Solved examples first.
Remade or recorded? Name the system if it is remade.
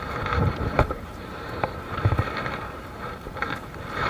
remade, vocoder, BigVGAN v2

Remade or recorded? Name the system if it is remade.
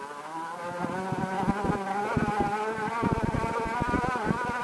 recorded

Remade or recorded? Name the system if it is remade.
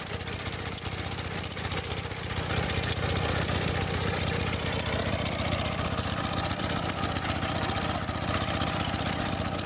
remade, vocoder, BigVGAN v2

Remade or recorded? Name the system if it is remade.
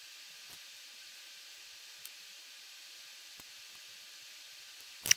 recorded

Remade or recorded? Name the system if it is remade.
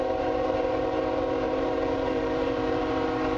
remade, vocoder, BigVGAN v2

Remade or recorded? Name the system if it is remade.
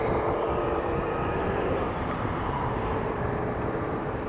remade, vocoder, BigVGAN v2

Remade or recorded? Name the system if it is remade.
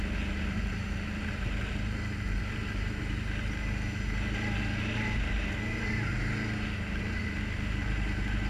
recorded